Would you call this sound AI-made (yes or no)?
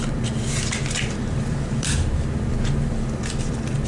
yes